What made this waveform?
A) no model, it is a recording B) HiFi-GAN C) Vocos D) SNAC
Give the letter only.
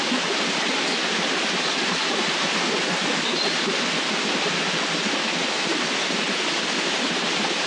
A